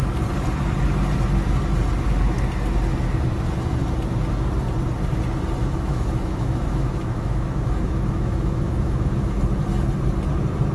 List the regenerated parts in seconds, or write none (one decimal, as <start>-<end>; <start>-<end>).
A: 5.6-9.4